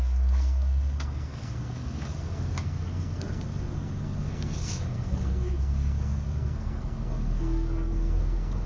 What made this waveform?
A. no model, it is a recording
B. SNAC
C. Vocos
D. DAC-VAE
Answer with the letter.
B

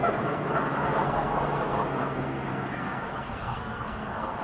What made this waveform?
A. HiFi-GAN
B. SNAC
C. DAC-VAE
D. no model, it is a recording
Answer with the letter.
B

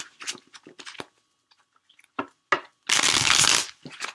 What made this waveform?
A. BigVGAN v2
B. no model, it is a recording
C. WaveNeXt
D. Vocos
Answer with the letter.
B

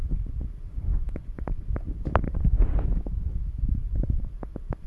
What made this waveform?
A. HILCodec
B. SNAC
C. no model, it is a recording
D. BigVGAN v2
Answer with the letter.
C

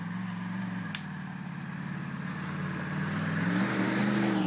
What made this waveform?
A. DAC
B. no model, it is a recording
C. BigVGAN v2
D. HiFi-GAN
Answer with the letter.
B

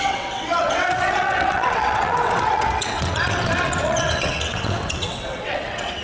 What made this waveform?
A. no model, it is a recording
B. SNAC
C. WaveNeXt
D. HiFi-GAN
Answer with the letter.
C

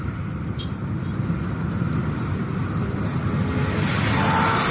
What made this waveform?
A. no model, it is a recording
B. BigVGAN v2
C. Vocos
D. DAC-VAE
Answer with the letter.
A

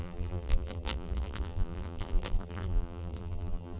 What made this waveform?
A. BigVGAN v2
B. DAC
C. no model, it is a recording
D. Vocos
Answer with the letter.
A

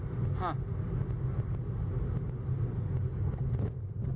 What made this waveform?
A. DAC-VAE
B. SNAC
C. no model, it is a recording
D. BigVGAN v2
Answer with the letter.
C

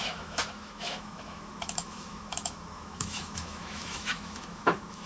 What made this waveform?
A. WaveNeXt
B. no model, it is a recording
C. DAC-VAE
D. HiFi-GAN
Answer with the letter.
C